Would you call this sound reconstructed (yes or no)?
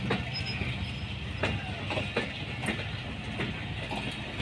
no